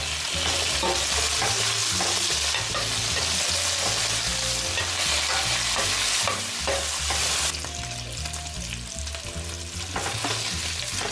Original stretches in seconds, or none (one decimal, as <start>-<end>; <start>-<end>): 0.0-11.1